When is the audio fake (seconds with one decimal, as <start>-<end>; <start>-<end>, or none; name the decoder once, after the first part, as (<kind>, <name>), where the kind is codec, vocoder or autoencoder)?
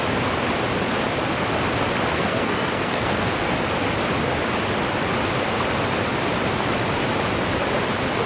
2.1-3.6 (codec, SNAC)